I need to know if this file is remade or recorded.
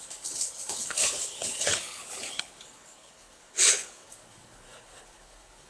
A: remade